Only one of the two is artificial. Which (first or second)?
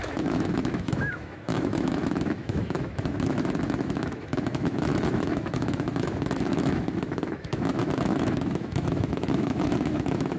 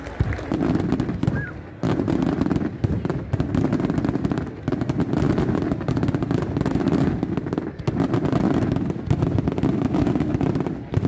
first